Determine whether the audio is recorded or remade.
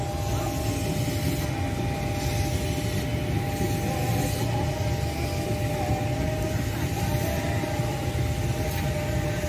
recorded